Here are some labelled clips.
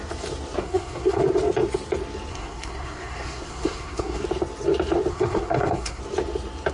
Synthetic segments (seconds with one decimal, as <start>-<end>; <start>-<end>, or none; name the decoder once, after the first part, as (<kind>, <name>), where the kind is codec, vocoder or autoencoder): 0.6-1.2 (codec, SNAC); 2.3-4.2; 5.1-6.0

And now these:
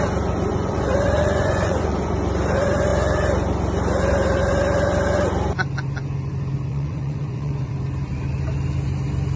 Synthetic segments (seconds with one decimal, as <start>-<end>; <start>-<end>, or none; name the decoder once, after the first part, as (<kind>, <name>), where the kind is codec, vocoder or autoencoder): 0.5-2.1 (vocoder, Vocos); 6.7-7.7

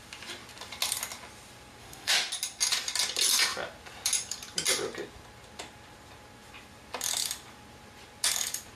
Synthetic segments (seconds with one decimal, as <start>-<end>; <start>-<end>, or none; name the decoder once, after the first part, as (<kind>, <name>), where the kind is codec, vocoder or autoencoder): 1.8-2.3 (autoencoder, DAC-VAE)

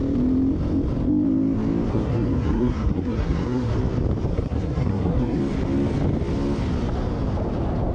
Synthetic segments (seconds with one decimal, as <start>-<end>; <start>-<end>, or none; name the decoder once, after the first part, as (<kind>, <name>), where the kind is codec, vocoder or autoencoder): 1.9-3.7 (codec, SNAC); 4.3-5.4

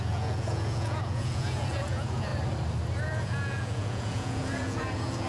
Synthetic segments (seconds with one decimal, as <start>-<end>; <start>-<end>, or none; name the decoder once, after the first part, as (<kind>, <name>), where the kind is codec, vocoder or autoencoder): 0.0-2.3 (vocoder, Vocos); 3.0-5.3